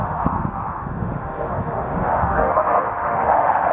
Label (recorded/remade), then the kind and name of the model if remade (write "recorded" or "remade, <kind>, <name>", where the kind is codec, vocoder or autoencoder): remade, autoencoder, DAC-VAE